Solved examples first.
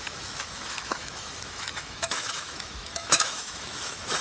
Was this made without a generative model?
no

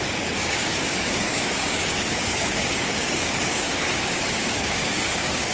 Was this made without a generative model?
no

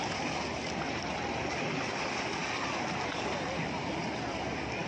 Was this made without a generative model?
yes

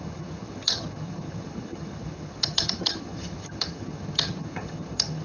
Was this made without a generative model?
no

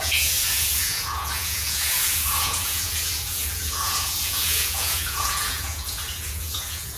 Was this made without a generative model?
no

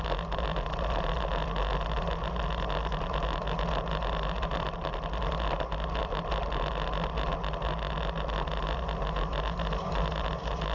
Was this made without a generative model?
yes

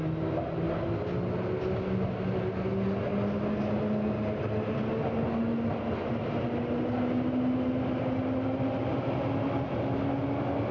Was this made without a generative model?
yes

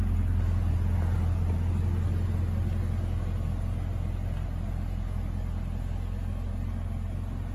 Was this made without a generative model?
yes